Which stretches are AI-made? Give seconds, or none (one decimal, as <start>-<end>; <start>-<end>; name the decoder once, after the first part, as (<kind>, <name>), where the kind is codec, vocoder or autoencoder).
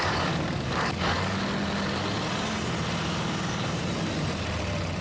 0.0-1.4 (codec, DAC); 3.0-3.8